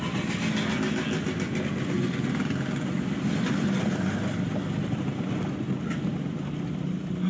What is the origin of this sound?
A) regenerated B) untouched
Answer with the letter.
B